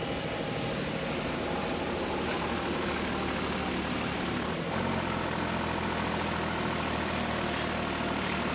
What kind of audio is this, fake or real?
real